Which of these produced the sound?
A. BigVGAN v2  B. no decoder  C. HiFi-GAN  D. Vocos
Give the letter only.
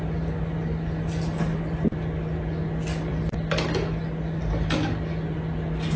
B